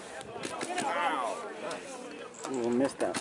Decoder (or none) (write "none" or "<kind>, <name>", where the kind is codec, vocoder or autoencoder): none